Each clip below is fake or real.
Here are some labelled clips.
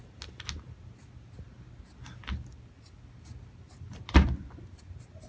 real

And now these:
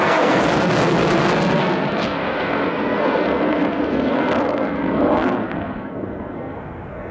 fake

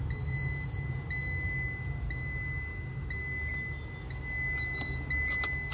real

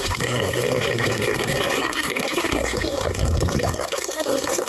fake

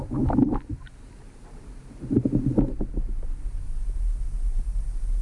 real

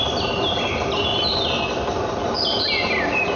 real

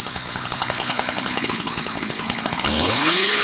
fake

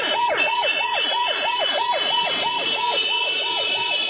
fake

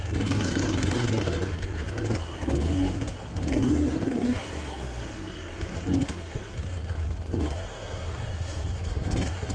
fake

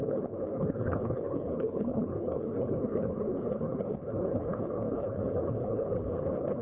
fake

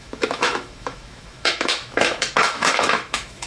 fake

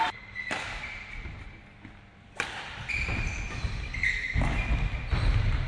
real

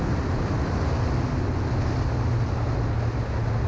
real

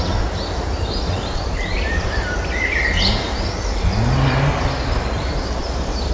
real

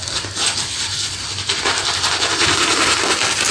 real